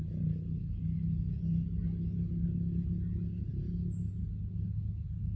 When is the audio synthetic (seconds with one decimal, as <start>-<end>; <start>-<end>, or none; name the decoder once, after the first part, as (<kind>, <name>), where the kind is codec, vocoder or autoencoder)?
none